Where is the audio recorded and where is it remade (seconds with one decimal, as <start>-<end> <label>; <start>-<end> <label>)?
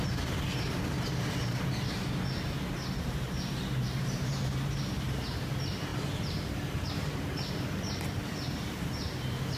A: 0.0-2.0 remade; 2.0-3.0 recorded; 3.0-9.6 remade